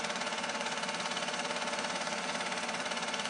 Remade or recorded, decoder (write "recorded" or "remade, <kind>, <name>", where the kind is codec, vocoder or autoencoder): remade, vocoder, Vocos